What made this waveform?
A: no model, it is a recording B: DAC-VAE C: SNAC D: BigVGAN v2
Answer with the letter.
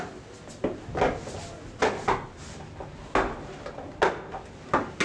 A